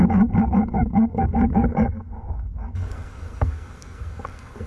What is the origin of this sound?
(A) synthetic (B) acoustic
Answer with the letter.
A